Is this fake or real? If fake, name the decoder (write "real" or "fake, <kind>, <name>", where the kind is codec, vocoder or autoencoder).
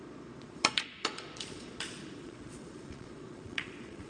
fake, vocoder, Vocos